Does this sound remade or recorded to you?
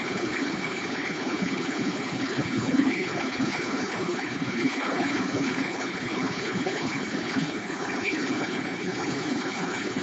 remade